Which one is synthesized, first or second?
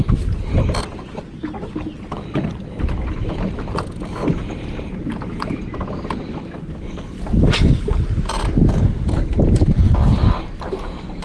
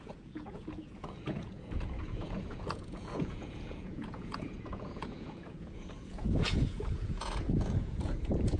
second